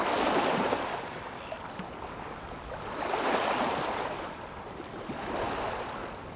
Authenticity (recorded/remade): recorded